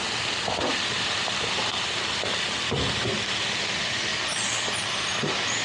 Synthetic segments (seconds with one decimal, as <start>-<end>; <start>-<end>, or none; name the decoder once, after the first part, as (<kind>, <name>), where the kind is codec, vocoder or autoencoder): 0.7-2.9 (vocoder, BigVGAN v2)